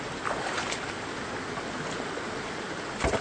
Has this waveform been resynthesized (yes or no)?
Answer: no